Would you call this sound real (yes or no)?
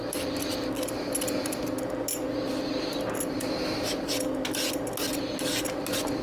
yes